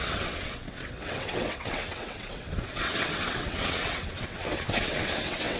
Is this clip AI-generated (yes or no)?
yes